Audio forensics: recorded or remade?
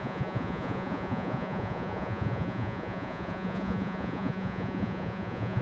remade